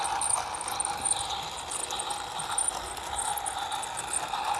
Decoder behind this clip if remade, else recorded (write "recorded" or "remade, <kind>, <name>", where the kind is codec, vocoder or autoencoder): recorded